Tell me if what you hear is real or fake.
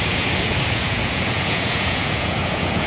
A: fake